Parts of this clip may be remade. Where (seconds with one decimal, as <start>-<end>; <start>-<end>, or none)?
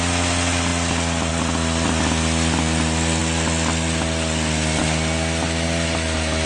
none